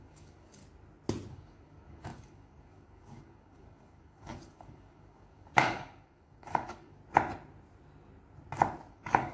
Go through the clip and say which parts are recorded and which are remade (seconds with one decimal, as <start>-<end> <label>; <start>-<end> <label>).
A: 0.0-0.6 remade; 0.6-1.3 recorded; 1.3-7.0 remade; 7.0-8.9 recorded; 8.9-9.3 remade